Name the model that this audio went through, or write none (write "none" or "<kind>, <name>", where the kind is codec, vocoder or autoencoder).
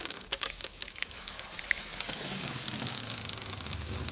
codec, DAC